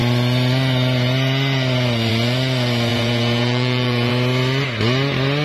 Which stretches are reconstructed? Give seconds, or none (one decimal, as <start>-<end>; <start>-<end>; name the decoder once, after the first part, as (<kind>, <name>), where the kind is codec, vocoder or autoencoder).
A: 2.9-4.1 (vocoder, Vocos)